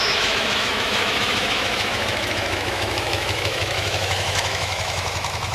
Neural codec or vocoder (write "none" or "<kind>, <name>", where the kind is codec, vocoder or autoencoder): autoencoder, DAC-VAE